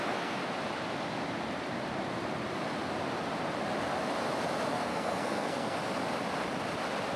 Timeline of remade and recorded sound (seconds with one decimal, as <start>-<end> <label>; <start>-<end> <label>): 0.0-0.4 remade; 0.4-4.7 recorded; 4.7-5.8 remade; 5.8-7.2 recorded